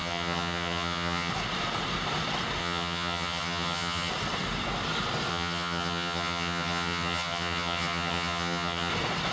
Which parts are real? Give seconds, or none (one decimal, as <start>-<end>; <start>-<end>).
1.3-2.6; 4.1-5.3; 8.9-9.3